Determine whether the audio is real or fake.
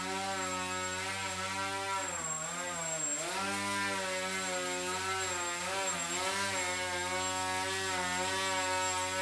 real